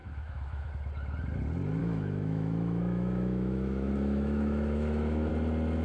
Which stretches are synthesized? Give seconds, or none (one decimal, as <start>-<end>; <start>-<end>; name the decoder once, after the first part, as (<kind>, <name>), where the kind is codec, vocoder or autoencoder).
0.0-0.7 (autoencoder, DAC-VAE); 1.8-5.3